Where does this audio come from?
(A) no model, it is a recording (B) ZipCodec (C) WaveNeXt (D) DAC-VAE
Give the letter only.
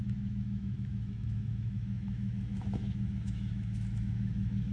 D